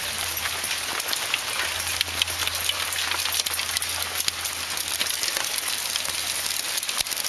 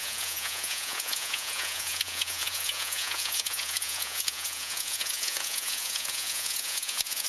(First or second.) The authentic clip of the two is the first